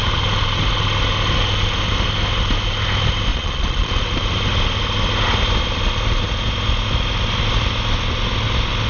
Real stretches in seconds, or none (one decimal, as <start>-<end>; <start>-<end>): 0.0-3.3; 3.9-8.9